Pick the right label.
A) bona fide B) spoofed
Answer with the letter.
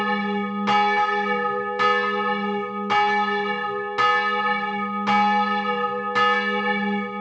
A